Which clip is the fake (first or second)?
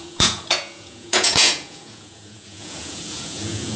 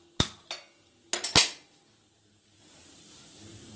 first